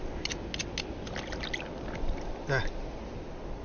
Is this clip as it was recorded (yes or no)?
yes